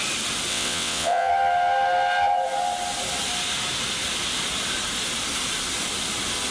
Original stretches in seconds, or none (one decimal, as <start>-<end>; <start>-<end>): 0.0-0.5; 1.3-6.5